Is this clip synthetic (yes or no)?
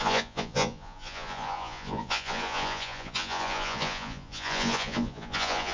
yes